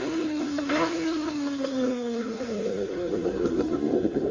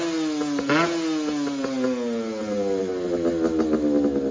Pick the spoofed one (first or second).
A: first